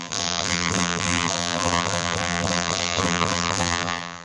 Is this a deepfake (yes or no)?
yes